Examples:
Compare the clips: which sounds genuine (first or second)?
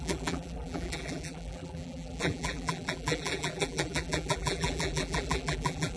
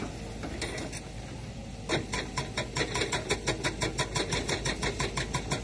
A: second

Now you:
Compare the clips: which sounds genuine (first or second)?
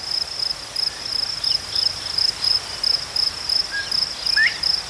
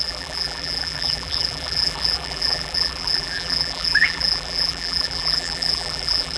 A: first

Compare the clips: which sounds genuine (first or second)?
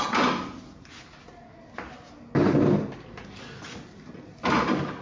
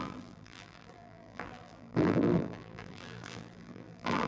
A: first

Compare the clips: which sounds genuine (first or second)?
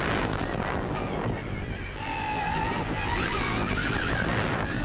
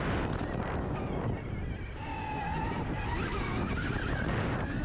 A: second